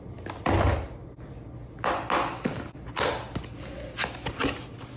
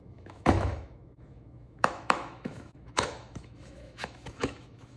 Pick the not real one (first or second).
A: second